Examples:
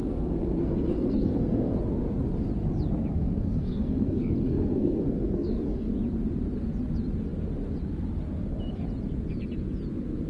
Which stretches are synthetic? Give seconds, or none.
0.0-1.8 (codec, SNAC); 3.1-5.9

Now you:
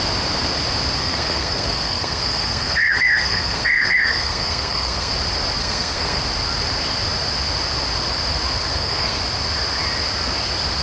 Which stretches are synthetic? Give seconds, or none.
1.0-5.1 (codec, SNAC); 5.6-6.2; 8.7-9.2

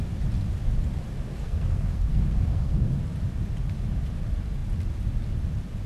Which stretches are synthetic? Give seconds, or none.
1.3-3.0 (codec, SNAC)

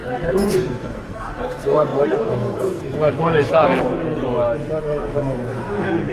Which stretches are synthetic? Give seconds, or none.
0.0-4.2 (codec, SNAC); 4.8-6.1